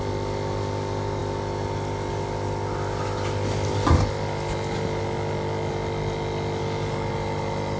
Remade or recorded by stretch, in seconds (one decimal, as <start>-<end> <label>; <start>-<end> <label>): 0.0-7.8 recorded